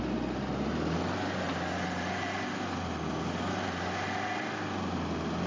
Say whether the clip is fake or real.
real